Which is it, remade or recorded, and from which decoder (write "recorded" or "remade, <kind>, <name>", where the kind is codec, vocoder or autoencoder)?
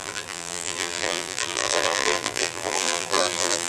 remade, vocoder, BigVGAN v2